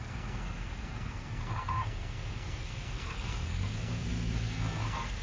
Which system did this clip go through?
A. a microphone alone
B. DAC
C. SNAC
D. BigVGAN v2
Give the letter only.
C